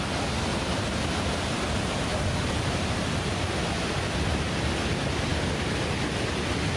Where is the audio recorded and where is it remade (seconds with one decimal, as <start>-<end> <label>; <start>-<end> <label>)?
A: 0.0-0.5 recorded; 0.5-3.0 remade; 3.0-6.8 recorded